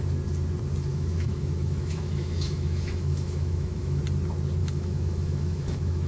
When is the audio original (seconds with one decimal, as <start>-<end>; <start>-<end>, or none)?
0.0-0.9; 4.0-4.6